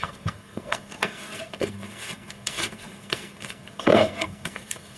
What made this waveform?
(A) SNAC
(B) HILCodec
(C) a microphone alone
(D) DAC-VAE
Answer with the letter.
A